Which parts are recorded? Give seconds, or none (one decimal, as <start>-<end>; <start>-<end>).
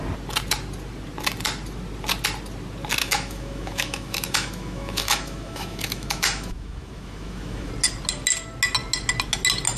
0.0-3.0; 7.7-9.8